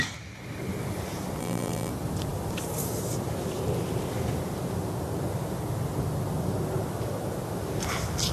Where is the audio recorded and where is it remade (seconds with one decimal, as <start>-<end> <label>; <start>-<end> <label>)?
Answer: 0.0-1.4 recorded; 1.4-1.9 remade; 1.9-8.3 recorded